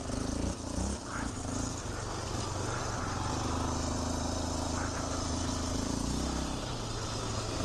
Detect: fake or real real